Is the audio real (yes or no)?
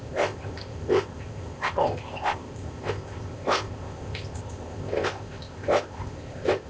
no